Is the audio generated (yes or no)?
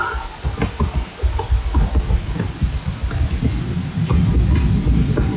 no